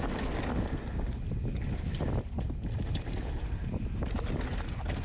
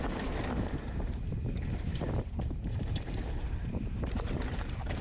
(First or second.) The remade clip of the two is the second